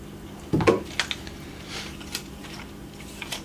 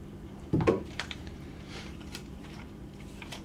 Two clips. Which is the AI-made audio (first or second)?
second